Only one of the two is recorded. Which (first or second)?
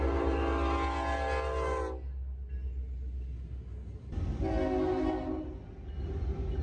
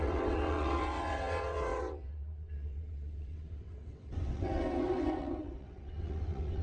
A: first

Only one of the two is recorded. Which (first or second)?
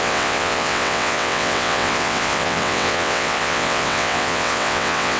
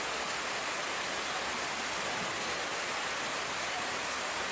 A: second